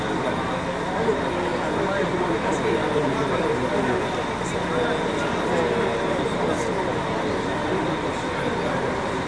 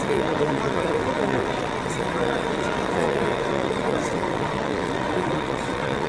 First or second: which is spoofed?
second